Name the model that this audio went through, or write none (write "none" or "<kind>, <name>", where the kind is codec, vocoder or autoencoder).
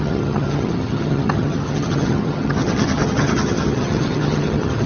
vocoder, HiFi-GAN